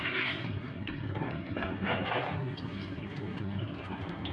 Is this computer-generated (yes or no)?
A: yes